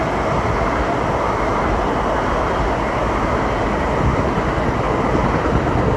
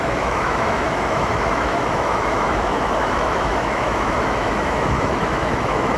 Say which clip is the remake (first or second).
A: second